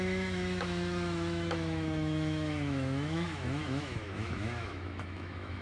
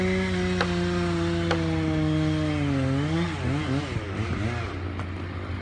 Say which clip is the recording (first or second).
second